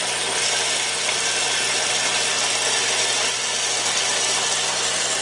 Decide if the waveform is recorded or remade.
recorded